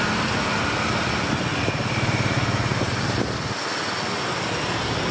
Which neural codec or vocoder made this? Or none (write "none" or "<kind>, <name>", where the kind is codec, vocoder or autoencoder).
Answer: none